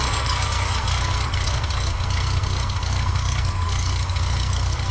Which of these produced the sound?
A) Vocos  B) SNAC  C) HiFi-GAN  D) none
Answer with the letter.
B